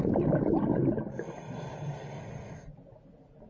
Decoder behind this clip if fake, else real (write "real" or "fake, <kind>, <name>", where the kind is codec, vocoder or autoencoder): real